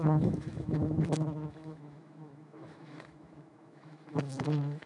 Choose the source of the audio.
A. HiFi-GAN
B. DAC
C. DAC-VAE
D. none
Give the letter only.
C